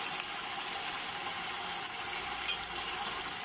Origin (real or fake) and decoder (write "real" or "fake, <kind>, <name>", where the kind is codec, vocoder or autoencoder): real